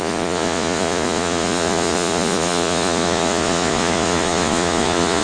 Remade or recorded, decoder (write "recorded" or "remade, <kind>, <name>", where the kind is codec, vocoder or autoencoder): remade, vocoder, Vocos